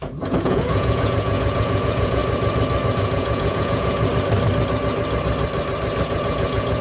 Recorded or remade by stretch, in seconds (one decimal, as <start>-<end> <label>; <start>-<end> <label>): 0.0-2.2 remade; 2.2-2.9 recorded; 2.9-4.1 remade; 4.1-6.1 recorded; 6.1-6.8 remade